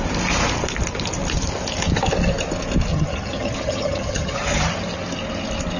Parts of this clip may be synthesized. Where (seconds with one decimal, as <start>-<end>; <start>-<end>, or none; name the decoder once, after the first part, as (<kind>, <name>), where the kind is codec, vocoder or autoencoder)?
2.9-4.7 (vocoder, HiFi-GAN)